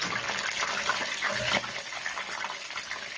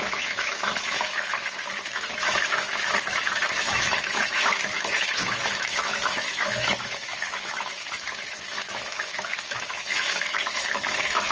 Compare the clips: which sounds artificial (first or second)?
second